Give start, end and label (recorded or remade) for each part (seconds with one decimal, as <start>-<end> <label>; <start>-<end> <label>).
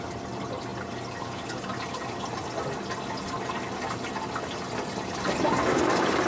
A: 0.0-6.3 recorded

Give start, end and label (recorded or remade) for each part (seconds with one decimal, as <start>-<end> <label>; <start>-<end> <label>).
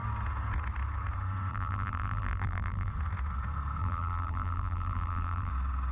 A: 0.0-1.5 recorded; 1.5-2.9 remade; 2.9-3.8 recorded; 3.8-5.5 remade; 5.5-5.9 recorded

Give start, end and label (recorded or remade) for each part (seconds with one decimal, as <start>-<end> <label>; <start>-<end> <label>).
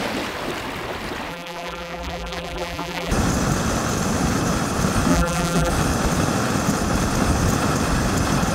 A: 0.0-1.3 recorded; 1.3-3.1 remade; 3.1-5.1 recorded; 5.1-5.7 remade; 5.7-8.5 recorded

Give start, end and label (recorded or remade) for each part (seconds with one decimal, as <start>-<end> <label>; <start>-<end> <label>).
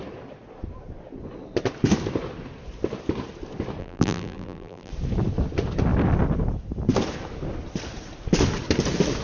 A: 0.0-3.8 recorded; 3.8-4.9 remade; 4.9-9.2 recorded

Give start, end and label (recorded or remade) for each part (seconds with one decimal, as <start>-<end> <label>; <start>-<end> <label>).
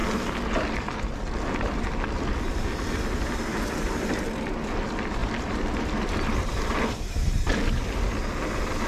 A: 0.0-5.2 recorded; 5.2-7.2 remade; 7.2-8.9 recorded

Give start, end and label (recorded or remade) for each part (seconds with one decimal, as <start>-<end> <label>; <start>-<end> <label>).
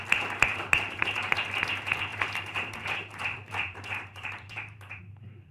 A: 0.0-0.5 recorded; 0.5-1.6 remade; 1.6-2.1 recorded; 2.1-5.0 remade; 5.0-5.5 recorded